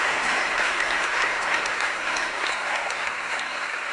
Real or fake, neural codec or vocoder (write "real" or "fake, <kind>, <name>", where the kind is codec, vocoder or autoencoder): fake, codec, SNAC